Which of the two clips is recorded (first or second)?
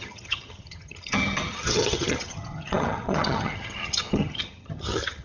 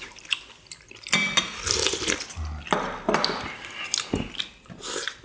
second